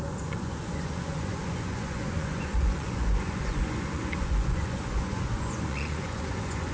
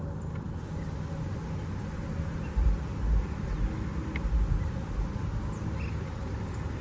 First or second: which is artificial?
first